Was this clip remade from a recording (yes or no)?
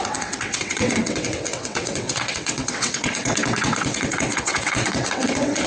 yes